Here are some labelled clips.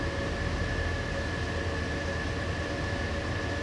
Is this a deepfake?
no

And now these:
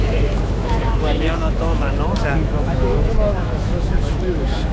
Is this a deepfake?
yes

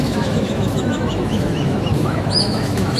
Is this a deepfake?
yes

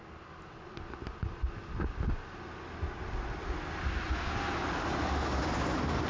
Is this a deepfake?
no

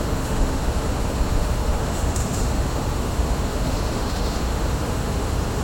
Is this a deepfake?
yes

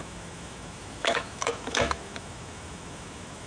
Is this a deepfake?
yes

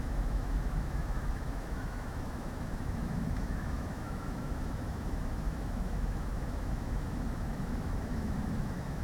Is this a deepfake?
yes